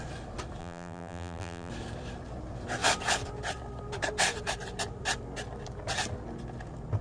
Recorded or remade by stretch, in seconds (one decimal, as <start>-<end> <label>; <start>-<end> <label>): 0.0-0.6 recorded; 0.6-1.7 remade; 1.7-7.0 recorded